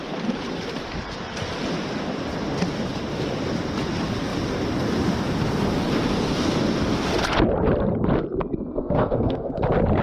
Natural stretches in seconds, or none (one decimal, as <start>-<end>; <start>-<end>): 0.0-8.8; 9.5-10.0